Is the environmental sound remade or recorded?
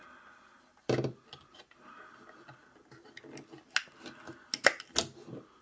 recorded